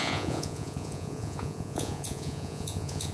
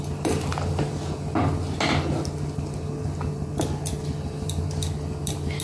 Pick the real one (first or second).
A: second